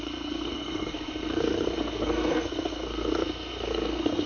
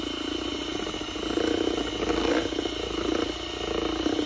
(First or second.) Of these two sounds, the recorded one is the second